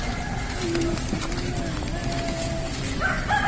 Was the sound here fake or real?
real